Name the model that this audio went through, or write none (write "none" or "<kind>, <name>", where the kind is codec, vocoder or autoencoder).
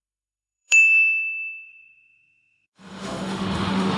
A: autoencoder, DAC-VAE